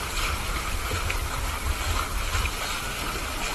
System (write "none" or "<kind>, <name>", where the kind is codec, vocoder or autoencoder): none